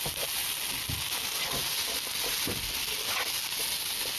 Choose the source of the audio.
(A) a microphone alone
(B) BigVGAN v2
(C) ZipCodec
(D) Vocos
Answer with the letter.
A